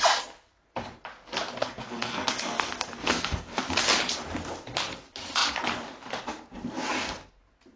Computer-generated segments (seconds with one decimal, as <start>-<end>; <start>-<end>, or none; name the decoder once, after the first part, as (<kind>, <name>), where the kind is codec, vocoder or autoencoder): 1.6-3.7 (codec, SNAC)

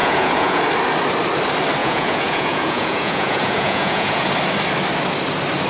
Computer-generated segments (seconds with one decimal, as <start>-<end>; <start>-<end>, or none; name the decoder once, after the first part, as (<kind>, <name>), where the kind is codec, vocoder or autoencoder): 0.0-0.6 (vocoder, Vocos); 1.8-4.3